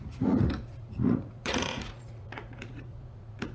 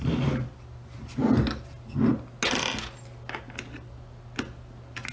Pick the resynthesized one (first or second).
first